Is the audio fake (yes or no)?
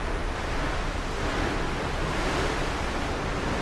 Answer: no